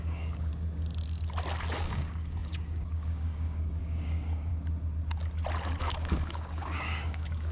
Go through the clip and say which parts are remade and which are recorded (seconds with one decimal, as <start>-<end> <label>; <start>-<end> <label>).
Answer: 0.0-0.5 remade; 0.5-1.8 recorded; 1.8-4.5 remade; 4.5-5.8 recorded; 5.8-7.5 remade